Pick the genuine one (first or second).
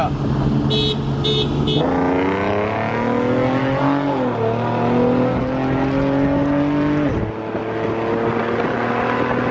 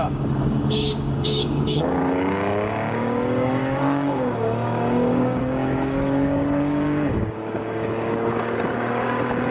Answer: first